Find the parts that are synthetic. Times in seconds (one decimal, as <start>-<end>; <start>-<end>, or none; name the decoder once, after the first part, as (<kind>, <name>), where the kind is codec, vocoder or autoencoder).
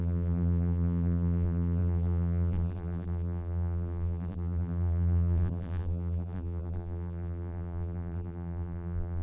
0.0-9.2 (vocoder, BigVGAN v2)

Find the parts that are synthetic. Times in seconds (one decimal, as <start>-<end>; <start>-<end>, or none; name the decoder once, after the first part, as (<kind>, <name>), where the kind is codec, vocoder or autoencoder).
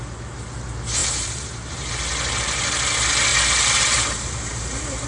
1.0-1.9 (vocoder, BigVGAN v2); 3.3-5.1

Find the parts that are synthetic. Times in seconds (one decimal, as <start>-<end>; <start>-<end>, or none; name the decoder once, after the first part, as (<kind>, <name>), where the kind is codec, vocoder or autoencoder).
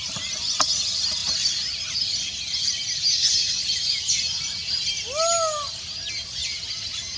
6.4-7.2 (vocoder, BigVGAN v2)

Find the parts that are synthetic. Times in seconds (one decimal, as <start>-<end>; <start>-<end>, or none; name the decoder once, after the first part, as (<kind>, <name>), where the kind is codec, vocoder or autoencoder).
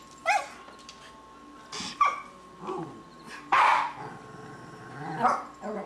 none